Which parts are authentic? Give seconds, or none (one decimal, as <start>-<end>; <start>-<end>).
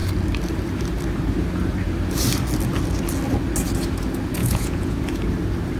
0.0-4.4; 5.0-5.8